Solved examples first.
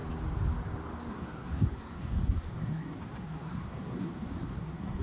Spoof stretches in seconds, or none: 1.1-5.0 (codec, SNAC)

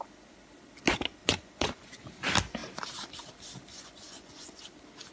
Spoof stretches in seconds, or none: 1.2-2.1 (vocoder, Vocos); 3.7-4.6

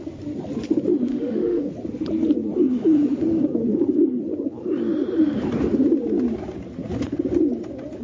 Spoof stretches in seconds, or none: 1.1-1.7 (autoencoder, DAC-VAE)

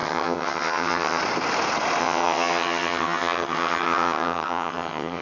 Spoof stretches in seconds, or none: 0.0-1.2 (vocoder, HiFi-GAN); 2.0-5.2

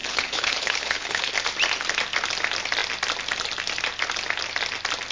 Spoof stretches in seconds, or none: 0.0-1.3 (codec, HILCodec)

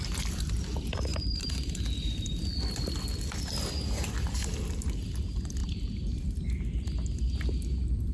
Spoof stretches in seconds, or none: 1.1-1.8 (vocoder, BigVGAN v2); 5.6-6.2

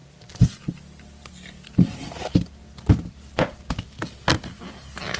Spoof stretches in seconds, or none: none